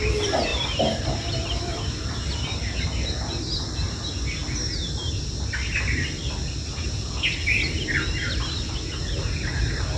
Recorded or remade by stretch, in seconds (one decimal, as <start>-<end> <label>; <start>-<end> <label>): 0.0-10.0 recorded